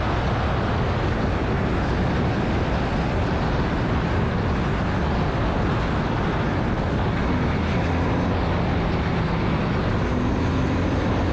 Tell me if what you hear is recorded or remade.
recorded